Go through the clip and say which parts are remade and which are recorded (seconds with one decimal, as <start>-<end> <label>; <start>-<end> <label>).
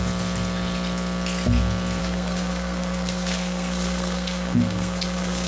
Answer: 0.0-2.0 recorded; 2.0-5.5 remade